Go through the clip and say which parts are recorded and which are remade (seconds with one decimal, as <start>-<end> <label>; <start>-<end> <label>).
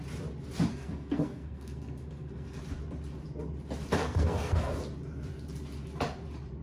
0.0-0.7 recorded; 0.7-2.6 remade; 2.6-4.0 recorded; 4.0-4.7 remade; 4.7-6.6 recorded